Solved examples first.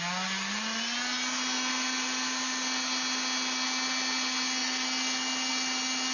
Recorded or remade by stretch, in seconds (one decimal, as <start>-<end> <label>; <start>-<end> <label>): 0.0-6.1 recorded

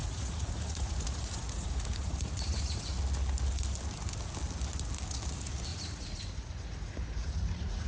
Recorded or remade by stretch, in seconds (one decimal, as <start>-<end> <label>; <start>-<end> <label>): 0.0-3.0 remade; 3.0-5.7 recorded; 5.7-7.9 remade

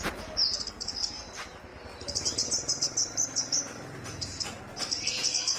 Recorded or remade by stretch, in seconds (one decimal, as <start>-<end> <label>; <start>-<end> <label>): 0.0-1.7 recorded; 1.7-4.6 remade; 4.6-5.6 recorded

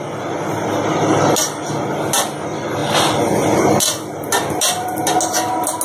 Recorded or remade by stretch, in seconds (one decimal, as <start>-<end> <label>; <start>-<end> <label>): 0.0-5.8 recorded